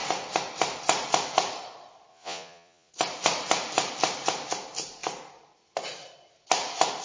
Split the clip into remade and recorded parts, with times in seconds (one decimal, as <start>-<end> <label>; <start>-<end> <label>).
0.0-2.1 recorded; 2.1-2.9 remade; 2.9-7.0 recorded